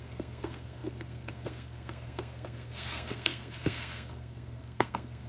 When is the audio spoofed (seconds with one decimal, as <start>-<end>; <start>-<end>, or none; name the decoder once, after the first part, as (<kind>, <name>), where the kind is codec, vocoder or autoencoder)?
0.0-5.3 (codec, SNAC)

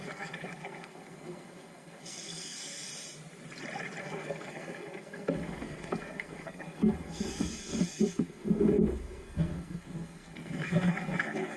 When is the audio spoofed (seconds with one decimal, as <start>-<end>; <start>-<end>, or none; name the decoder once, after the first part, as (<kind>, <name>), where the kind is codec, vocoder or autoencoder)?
0.0-2.9 (codec, SNAC); 4.0-11.6